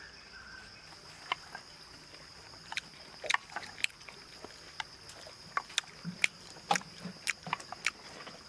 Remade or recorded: recorded